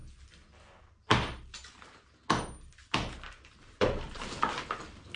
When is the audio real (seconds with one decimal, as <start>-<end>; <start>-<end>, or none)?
0.0-3.1